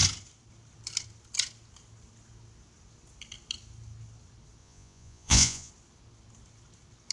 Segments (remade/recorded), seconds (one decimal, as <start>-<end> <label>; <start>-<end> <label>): 0.0-4.6 recorded; 4.6-5.7 remade; 5.7-7.1 recorded